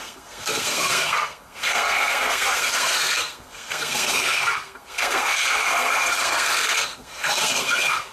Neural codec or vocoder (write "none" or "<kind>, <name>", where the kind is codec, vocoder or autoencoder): codec, SNAC